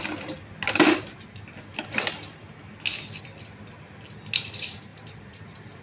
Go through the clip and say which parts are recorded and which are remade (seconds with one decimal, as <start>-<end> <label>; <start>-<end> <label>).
0.0-4.9 recorded; 4.9-5.8 remade